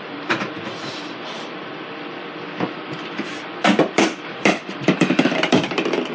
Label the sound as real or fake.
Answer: fake